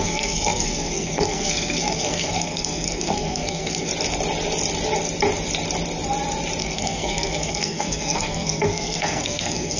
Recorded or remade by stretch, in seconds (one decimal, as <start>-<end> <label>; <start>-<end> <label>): 0.0-3.9 remade; 3.9-6.6 recorded; 6.6-9.8 remade